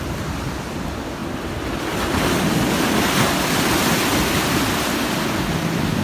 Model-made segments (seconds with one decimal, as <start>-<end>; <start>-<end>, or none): none

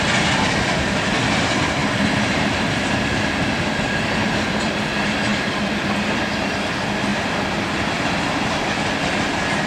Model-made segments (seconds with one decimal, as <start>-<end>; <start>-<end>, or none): 1.8-4.7; 5.3-6.1; 7.1-9.2

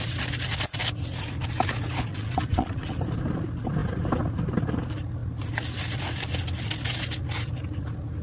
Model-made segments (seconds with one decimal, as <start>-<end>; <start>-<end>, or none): 2.1-3.0

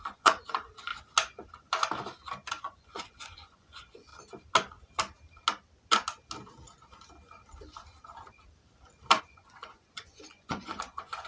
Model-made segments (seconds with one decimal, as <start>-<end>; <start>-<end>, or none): 0.0-0.9; 2.5-4.1; 9.2-11.3